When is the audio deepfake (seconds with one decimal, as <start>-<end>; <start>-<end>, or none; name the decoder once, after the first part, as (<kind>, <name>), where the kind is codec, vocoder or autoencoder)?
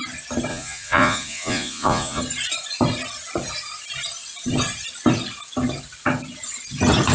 0.5-2.2 (vocoder, Vocos)